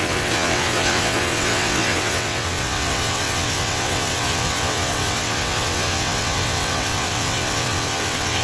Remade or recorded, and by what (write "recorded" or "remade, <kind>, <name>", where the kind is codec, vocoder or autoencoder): remade, vocoder, WaveNeXt